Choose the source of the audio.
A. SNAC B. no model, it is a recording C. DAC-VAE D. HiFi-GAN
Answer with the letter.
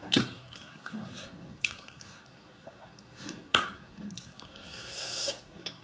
A